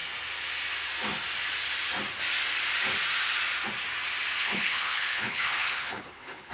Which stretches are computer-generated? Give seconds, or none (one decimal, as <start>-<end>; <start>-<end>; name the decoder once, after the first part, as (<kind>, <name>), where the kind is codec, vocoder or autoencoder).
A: 4.4-6.5 (codec, HILCodec)